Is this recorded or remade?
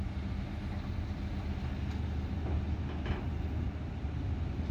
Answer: recorded